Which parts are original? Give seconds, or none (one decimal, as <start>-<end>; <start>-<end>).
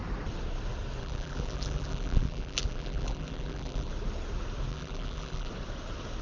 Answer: 0.0-1.0; 3.9-4.7; 5.5-6.2